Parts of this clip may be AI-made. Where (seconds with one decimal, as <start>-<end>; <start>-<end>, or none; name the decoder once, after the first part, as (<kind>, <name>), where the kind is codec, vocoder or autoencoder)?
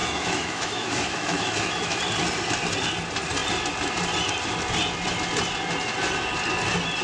0.0-2.0 (autoencoder, DAC-VAE)